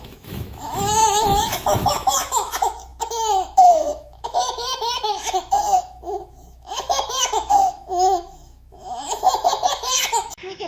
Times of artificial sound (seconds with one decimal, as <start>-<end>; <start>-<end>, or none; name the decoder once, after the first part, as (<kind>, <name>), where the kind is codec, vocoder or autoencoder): 0.0-10.7 (autoencoder, DAC-VAE)